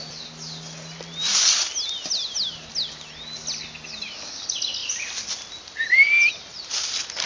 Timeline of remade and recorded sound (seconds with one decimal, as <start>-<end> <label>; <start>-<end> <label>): 0.0-7.3 recorded